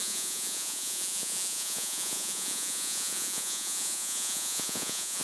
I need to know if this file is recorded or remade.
remade